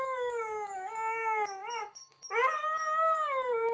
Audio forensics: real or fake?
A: fake